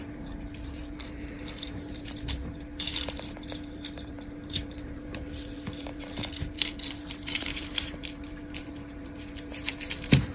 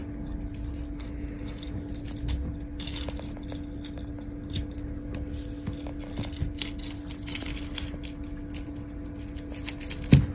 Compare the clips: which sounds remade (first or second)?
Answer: first